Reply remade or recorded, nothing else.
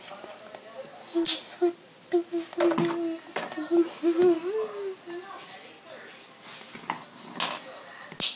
recorded